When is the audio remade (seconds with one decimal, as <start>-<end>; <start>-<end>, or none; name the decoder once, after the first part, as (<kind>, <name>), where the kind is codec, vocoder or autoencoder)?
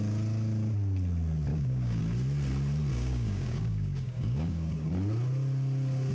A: 1.5-2.0 (codec, DAC); 2.9-4.9